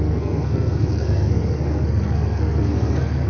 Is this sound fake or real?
fake